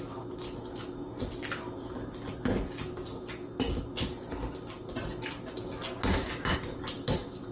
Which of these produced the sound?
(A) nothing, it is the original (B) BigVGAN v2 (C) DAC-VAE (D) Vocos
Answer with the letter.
A